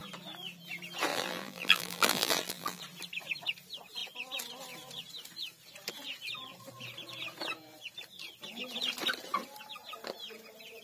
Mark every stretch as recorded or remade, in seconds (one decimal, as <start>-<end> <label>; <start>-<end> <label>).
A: 0.0-1.1 recorded; 1.1-2.8 remade; 2.8-10.8 recorded